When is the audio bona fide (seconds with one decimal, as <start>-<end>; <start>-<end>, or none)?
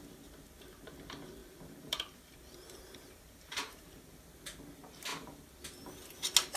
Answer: 0.0-1.4; 4.2-6.6